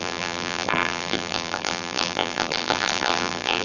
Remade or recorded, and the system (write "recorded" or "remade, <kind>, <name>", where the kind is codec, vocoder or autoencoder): remade, vocoder, BigVGAN v2